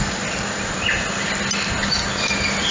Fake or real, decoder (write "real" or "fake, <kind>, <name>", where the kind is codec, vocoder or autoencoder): real